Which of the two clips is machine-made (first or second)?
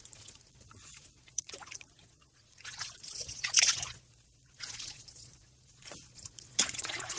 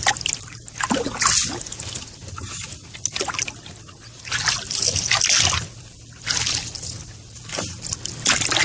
first